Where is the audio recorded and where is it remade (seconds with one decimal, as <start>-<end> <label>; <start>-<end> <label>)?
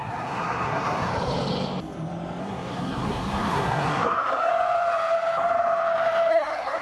0.0-1.1 remade; 1.1-2.4 recorded; 2.4-4.5 remade; 4.5-6.3 recorded; 6.3-6.8 remade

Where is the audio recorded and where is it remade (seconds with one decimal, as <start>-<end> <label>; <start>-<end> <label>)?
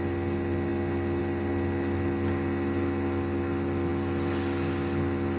0.0-5.4 recorded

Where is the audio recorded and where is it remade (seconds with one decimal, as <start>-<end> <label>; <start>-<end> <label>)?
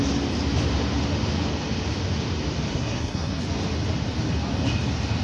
0.0-2.7 recorded; 2.7-3.4 remade; 3.4-5.2 recorded